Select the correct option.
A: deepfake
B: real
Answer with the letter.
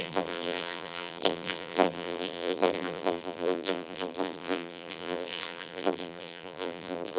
A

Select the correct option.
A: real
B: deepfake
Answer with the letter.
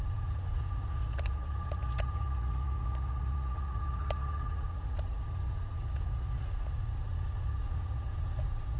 B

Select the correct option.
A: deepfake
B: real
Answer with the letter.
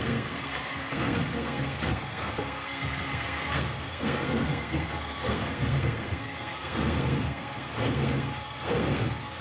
A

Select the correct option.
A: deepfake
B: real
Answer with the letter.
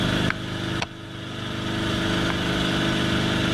B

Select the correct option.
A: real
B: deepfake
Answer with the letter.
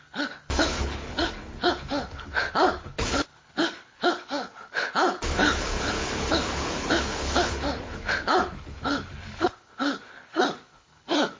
B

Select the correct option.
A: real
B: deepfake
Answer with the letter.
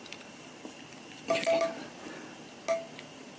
A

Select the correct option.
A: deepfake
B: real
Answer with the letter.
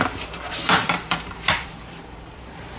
A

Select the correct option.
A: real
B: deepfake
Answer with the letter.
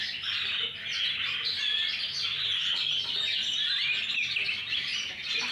A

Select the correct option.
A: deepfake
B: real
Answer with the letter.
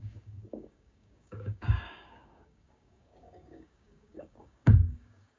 A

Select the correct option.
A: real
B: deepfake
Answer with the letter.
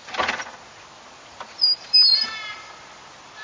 A